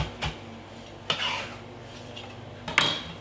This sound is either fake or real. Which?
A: real